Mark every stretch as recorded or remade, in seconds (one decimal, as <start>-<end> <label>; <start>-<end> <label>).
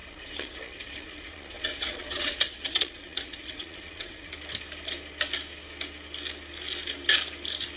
0.0-4.3 remade; 4.3-7.8 recorded